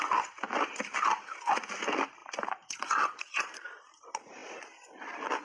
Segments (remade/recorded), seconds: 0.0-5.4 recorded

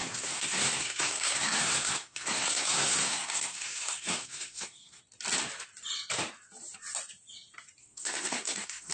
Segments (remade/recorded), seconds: 0.0-5.0 remade; 5.0-7.8 recorded; 7.8-8.9 remade